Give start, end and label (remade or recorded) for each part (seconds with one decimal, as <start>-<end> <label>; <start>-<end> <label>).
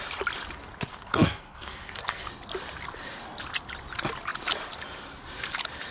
0.0-0.9 recorded; 0.9-2.3 remade; 2.3-5.9 recorded